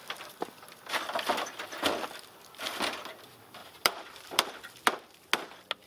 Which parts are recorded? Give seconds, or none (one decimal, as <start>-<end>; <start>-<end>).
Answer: 0.9-3.6; 4.5-5.9